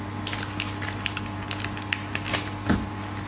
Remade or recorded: recorded